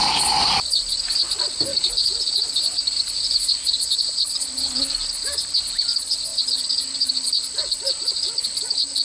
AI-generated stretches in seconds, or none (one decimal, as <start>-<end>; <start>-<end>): 1.7-4.2